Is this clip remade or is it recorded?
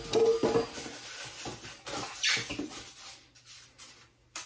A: recorded